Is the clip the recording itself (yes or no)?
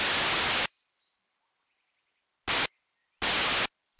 yes